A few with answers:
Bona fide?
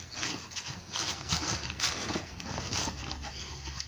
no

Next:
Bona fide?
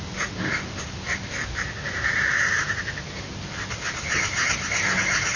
yes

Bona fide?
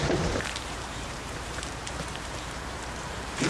no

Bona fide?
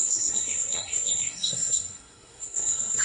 no